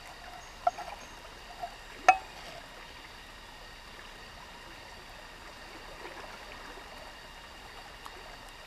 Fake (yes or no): no